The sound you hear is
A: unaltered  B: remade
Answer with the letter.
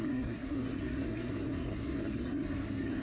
B